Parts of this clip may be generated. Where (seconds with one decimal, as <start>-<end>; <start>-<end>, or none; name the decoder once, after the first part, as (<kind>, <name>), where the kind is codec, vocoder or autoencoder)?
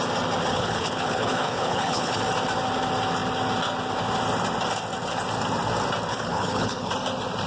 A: 0.5-2.2 (codec, HILCodec); 6.1-6.9